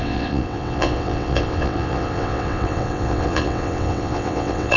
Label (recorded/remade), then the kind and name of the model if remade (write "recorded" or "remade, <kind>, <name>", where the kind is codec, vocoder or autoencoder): remade, vocoder, WaveNeXt